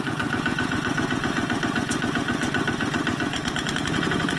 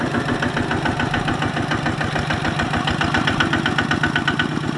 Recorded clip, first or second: second